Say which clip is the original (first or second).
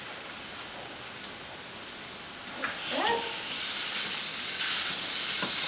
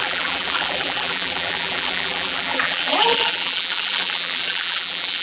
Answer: first